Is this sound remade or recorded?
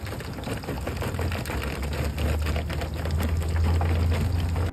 recorded